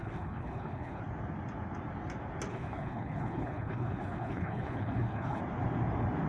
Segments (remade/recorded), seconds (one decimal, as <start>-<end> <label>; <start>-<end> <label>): 0.0-1.0 remade; 1.0-2.5 recorded; 2.5-5.4 remade; 5.4-6.3 recorded